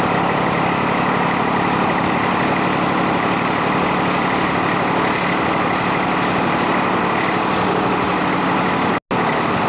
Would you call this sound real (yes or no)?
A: yes